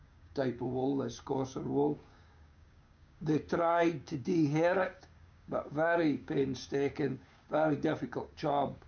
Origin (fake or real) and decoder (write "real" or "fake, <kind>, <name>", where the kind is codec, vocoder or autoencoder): fake, codec, DAC